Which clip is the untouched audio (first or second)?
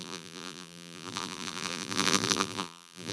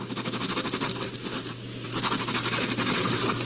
second